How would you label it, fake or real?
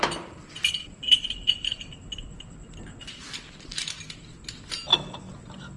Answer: real